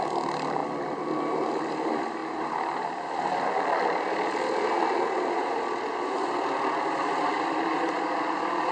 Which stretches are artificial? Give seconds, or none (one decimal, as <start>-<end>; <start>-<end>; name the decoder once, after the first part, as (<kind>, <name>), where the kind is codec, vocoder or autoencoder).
0.0-2.2 (vocoder, BigVGAN v2); 6.1-8.7